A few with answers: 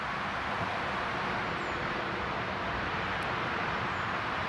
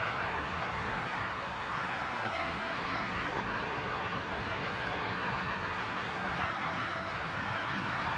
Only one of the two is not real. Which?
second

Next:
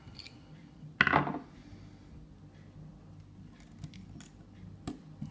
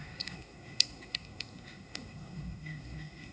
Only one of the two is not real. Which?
second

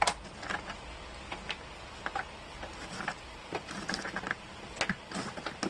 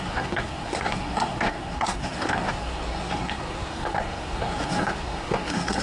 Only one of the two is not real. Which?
second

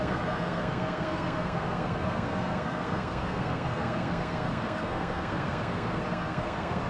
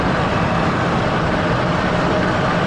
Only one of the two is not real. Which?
first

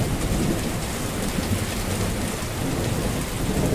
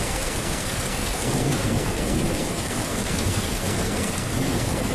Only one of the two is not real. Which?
second